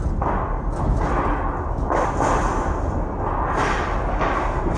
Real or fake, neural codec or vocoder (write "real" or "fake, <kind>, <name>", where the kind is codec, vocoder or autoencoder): real